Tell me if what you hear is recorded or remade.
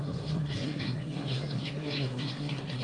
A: remade